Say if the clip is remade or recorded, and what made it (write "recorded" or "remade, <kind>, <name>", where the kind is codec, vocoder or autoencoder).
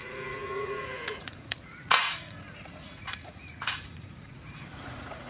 remade, vocoder, Vocos